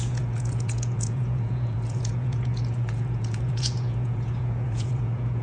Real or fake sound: fake